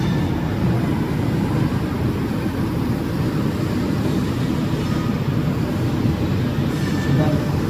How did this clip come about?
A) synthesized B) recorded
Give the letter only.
B